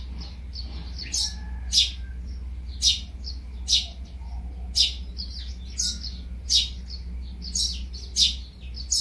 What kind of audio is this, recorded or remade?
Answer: recorded